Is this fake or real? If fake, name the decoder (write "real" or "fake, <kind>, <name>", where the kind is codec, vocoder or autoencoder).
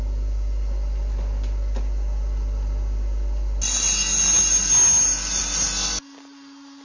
real